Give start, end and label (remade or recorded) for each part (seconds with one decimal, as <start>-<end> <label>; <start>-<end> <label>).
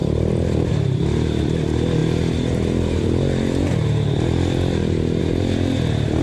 0.0-6.2 recorded